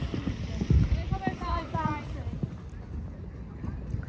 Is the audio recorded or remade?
recorded